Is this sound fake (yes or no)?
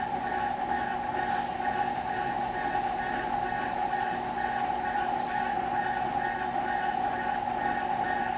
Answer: no